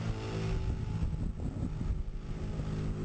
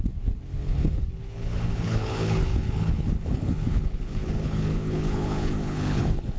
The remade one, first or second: second